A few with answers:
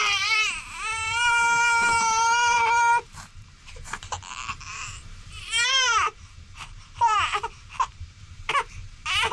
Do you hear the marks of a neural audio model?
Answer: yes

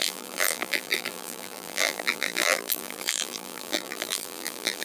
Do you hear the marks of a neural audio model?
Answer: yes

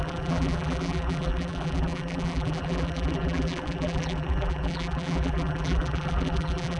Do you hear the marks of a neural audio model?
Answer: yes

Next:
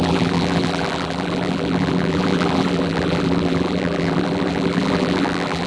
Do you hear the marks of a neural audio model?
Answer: yes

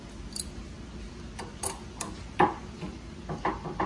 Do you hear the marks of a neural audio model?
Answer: no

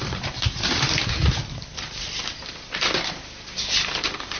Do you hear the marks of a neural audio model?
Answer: yes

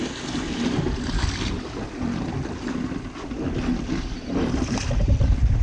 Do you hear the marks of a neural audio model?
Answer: no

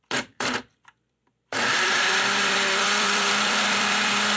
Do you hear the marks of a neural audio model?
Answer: yes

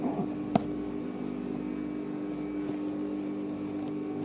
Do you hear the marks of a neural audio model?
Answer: no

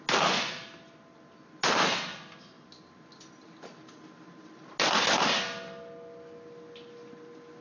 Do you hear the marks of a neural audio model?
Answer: no